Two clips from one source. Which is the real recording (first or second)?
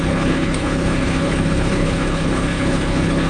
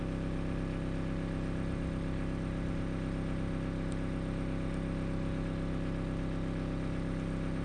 second